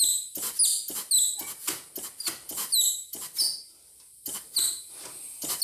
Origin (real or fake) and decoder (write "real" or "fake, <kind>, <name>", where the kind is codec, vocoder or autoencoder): real